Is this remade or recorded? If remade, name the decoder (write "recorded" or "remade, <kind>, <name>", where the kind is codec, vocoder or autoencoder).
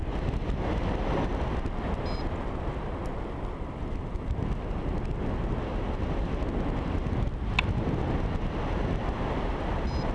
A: recorded